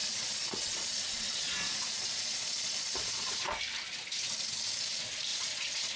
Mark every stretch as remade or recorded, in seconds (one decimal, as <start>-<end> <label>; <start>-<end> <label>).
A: 0.0-3.6 remade; 3.6-5.3 recorded; 5.3-6.0 remade